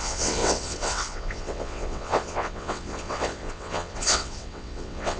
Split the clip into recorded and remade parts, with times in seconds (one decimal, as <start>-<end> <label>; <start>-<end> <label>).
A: 0.0-5.2 remade